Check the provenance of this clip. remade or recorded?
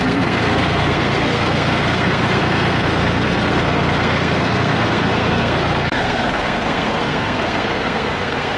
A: remade